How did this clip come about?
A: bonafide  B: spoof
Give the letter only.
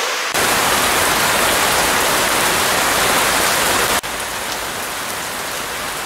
A